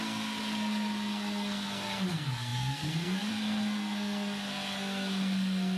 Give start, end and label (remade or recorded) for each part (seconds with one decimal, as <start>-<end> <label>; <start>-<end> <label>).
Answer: 0.0-5.8 remade

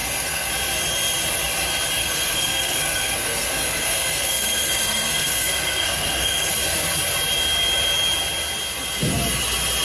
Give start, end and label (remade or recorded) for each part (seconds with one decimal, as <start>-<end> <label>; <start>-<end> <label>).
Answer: 0.0-0.5 remade; 0.5-2.0 recorded; 2.0-6.5 remade; 6.5-9.8 recorded